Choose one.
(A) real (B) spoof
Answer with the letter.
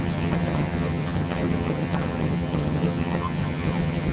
B